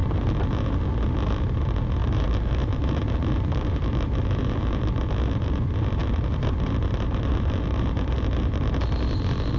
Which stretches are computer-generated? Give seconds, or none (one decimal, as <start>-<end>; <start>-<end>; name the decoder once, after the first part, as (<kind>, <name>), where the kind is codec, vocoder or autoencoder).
0.0-0.8 (vocoder, BigVGAN v2); 2.0-4.9; 6.0-8.8